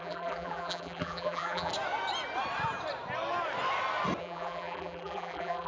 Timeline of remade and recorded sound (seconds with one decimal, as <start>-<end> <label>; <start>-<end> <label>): 0.0-1.7 remade; 1.7-4.2 recorded; 4.2-5.7 remade